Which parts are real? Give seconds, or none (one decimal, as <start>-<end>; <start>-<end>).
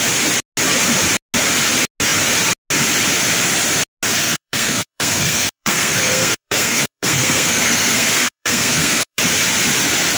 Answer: 0.0-4.2; 9.2-10.2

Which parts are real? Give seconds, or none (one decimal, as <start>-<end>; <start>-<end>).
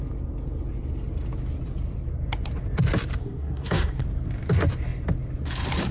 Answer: 0.0-3.2; 4.0-5.9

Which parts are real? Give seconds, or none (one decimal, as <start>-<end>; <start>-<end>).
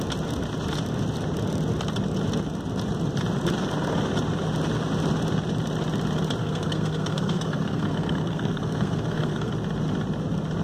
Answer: 0.0-6.4; 9.5-10.6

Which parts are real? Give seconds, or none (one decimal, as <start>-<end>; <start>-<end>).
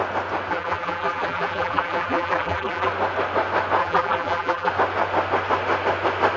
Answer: 0.0-0.5; 2.9-3.8; 4.7-6.4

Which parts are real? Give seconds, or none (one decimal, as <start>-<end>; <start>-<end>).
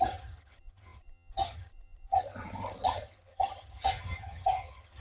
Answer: none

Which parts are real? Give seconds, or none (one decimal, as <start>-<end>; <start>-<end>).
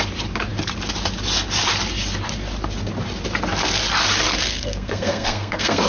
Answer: 0.0-4.5